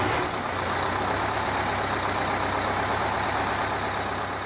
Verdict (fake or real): real